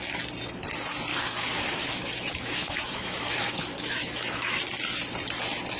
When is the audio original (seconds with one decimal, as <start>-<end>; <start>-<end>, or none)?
0.0-1.1; 4.6-5.8